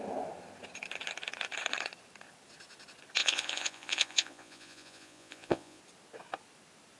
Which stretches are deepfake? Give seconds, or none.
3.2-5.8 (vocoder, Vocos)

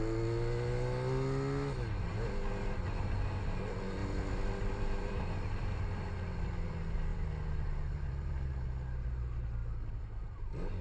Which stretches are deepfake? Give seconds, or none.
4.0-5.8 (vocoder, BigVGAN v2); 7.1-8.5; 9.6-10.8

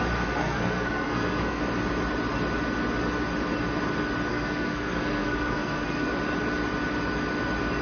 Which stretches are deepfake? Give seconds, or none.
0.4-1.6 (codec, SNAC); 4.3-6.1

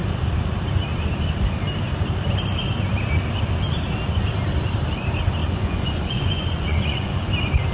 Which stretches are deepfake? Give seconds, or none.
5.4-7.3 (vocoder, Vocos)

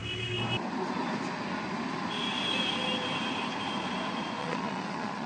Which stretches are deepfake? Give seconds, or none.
4.4-5.3 (vocoder, Vocos)